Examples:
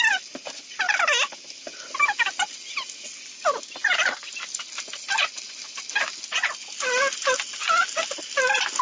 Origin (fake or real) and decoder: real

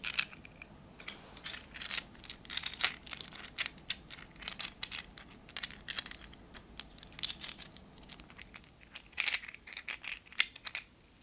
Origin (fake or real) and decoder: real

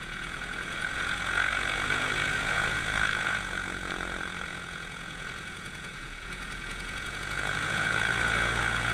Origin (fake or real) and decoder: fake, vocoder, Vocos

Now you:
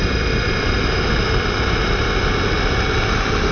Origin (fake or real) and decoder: real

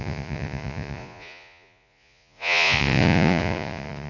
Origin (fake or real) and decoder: fake, vocoder, Vocos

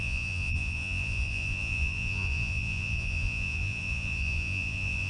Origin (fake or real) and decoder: fake, vocoder, Vocos